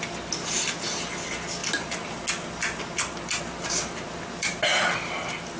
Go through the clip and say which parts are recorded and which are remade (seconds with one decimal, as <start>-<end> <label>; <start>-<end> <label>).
0.0-5.6 recorded

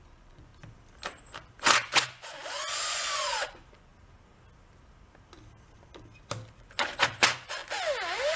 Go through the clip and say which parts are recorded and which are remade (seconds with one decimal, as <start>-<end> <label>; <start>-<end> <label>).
0.0-0.5 remade; 0.5-1.6 recorded; 1.6-3.9 remade; 3.9-6.6 recorded; 6.6-7.6 remade; 7.6-8.4 recorded